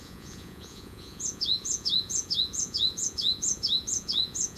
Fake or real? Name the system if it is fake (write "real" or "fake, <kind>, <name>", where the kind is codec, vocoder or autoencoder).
fake, vocoder, Vocos